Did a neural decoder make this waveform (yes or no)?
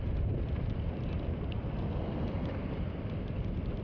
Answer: yes